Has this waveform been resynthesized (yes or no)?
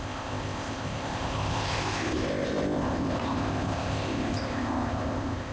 yes